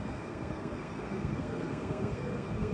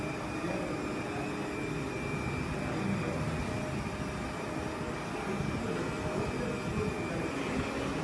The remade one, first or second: first